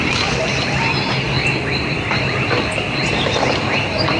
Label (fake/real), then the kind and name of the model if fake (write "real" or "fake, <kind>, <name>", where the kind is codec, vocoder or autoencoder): real